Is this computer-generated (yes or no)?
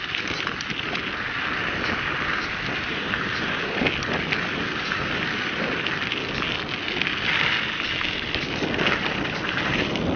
no